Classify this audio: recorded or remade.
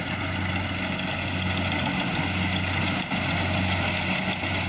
recorded